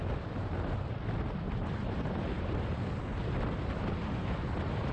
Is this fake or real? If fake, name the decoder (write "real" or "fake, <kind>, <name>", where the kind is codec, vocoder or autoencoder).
real